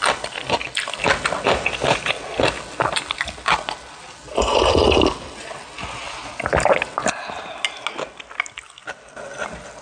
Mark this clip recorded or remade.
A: recorded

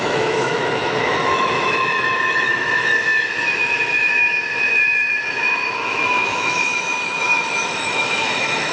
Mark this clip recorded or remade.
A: remade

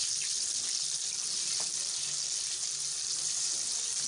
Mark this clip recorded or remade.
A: recorded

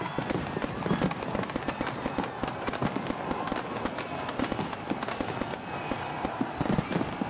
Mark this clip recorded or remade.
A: recorded